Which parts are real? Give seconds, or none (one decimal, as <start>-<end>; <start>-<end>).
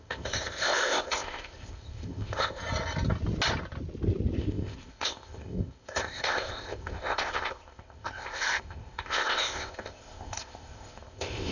2.6-4.4